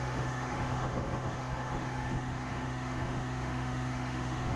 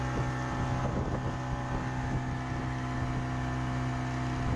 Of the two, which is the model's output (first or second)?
first